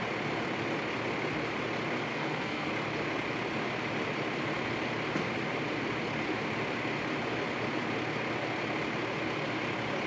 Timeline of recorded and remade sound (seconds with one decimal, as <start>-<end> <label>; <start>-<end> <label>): 0.0-2.1 recorded; 2.1-2.7 remade; 2.7-10.1 recorded